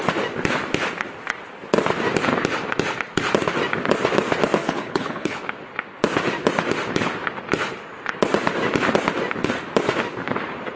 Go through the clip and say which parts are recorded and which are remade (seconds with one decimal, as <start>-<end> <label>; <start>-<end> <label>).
0.0-4.6 recorded; 4.6-5.4 remade; 5.4-10.8 recorded